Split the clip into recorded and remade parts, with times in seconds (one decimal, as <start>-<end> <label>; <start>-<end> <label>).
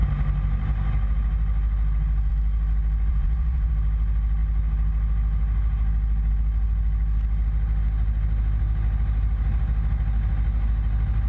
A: 0.0-3.1 recorded; 3.1-3.7 remade; 3.7-11.3 recorded